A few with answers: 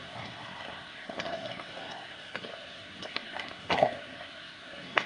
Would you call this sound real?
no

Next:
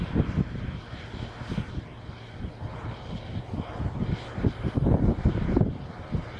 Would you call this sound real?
yes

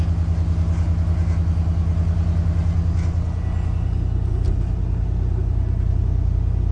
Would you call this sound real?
yes